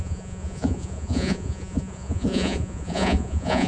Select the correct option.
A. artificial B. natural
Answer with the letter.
A